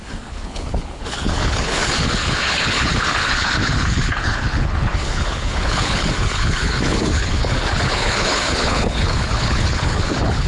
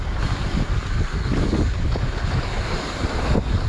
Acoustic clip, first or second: second